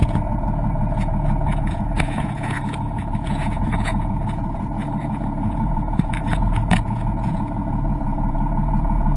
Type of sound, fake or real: fake